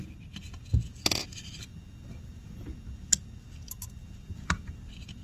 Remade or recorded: recorded